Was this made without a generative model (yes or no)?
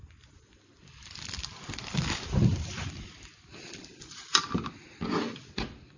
no